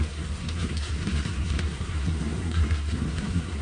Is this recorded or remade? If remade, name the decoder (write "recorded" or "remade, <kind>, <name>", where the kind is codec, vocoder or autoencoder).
remade, codec, SNAC